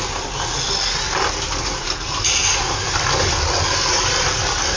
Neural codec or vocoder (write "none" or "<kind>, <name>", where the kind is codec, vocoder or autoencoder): none